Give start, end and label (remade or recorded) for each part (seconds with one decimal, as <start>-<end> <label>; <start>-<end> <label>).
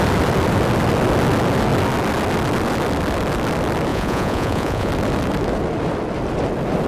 0.0-3.9 recorded; 3.9-4.9 remade; 4.9-6.9 recorded